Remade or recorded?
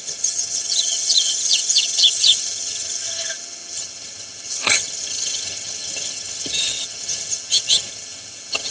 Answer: remade